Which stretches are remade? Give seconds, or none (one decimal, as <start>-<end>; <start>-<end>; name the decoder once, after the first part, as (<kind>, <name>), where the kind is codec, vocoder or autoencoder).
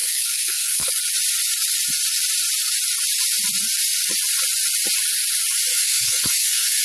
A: 0.0-0.9 (codec, SNAC); 5.7-6.8